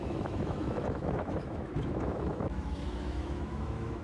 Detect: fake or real fake